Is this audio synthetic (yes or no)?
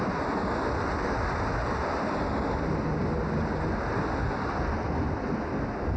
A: no